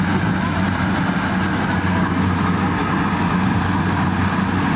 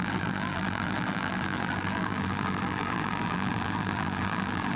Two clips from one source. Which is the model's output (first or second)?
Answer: second